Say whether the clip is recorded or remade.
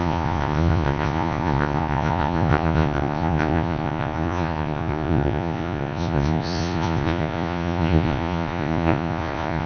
remade